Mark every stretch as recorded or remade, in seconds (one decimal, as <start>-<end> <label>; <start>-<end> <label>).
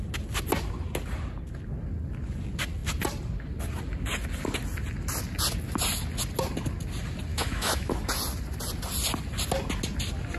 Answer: 0.0-7.3 recorded; 7.3-7.9 remade; 7.9-10.4 recorded